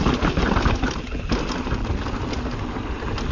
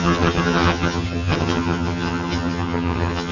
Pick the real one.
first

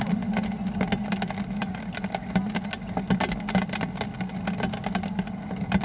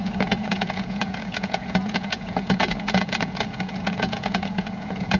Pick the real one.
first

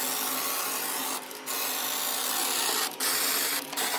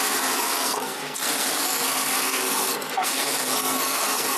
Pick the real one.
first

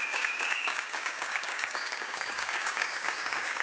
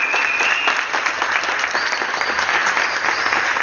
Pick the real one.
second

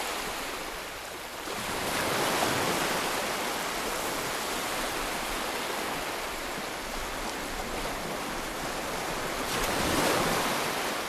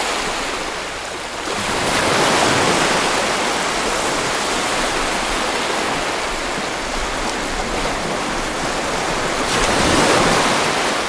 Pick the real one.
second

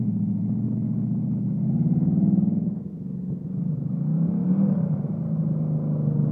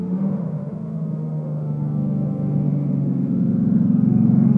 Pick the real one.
first